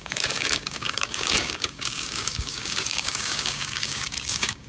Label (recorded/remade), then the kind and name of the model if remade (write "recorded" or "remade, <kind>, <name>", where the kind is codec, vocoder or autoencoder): remade, codec, DAC